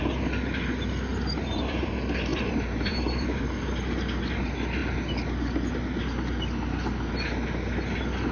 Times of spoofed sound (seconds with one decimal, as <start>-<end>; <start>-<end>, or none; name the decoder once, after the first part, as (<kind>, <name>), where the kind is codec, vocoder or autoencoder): 1.1-1.9 (vocoder, BigVGAN v2); 2.3-3.4

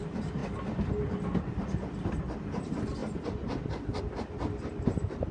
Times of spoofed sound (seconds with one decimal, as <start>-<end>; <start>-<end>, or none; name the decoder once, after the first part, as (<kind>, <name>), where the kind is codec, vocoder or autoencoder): none

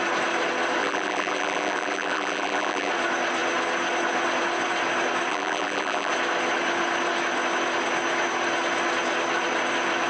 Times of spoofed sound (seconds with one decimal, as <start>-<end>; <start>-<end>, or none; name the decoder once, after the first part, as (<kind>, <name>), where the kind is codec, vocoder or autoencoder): 0.8-2.9 (vocoder, BigVGAN v2); 5.3-6.1

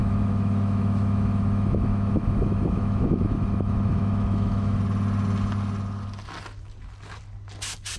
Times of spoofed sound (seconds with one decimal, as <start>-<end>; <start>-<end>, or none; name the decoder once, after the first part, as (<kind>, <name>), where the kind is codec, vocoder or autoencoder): 0.0-4.8 (autoencoder, DAC-VAE)

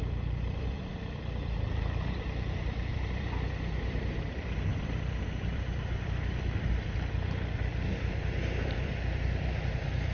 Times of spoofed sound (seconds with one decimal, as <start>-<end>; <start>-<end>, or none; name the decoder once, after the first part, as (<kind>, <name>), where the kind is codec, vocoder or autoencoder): 0.0-10.1 (vocoder, BigVGAN v2)

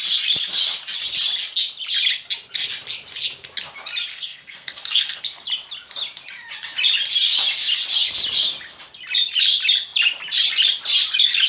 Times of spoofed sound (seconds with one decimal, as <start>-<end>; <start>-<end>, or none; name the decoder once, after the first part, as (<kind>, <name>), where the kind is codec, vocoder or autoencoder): 4.1-5.2 (codec, SNAC)